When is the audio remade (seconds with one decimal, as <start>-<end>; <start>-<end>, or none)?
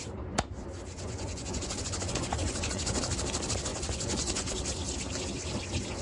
1.0-3.0; 3.7-4.6